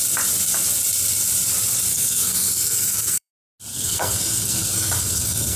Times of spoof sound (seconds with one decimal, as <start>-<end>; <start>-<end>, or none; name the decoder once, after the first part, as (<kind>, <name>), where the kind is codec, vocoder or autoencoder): 1.9-3.3 (codec, SNAC); 3.7-5.6